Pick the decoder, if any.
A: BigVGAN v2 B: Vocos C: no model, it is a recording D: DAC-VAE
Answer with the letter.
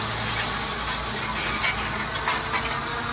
C